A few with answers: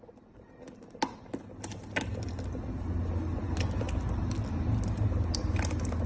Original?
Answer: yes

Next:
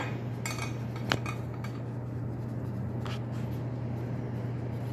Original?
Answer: yes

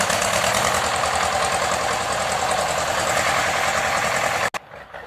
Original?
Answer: yes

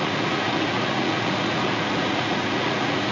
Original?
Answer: no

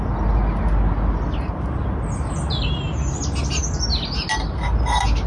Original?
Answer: yes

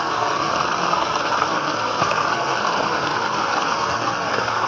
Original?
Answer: no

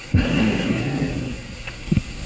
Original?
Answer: no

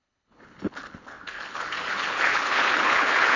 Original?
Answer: no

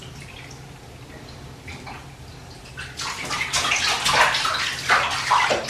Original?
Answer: yes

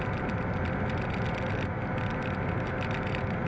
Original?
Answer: yes